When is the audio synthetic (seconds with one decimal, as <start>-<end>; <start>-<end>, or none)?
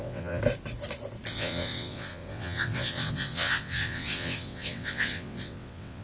0.0-0.4; 1.3-6.0